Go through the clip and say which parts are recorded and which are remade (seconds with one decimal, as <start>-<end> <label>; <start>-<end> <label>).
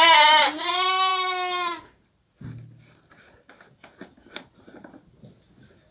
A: 0.0-5.9 recorded